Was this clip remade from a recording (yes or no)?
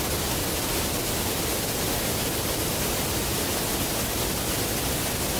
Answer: no